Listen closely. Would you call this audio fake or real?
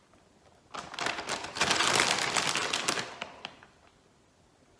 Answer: real